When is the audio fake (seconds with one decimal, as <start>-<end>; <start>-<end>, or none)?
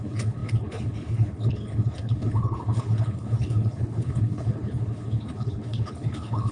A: 0.0-6.5